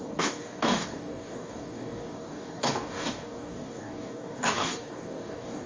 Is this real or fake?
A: fake